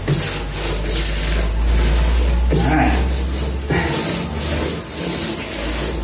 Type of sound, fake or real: real